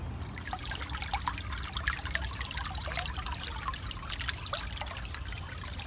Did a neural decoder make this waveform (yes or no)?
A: no